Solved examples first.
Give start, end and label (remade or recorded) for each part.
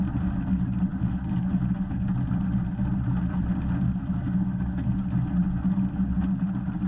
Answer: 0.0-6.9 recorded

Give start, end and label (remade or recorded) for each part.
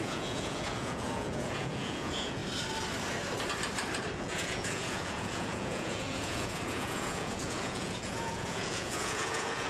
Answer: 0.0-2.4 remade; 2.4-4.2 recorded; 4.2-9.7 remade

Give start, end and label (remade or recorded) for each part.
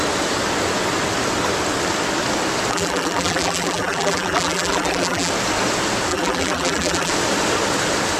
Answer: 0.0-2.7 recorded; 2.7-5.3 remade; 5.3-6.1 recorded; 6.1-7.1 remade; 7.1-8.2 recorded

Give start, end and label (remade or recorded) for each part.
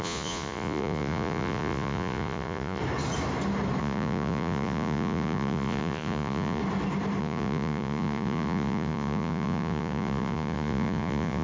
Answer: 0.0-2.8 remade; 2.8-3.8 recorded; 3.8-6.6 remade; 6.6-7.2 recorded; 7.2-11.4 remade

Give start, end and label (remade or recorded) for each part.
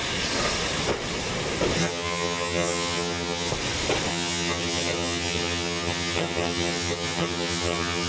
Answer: 0.0-1.8 recorded; 1.8-3.5 remade; 3.5-4.1 recorded; 4.1-8.1 remade